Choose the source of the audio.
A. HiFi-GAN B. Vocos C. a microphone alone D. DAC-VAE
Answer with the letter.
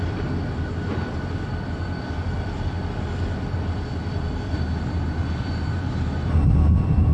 C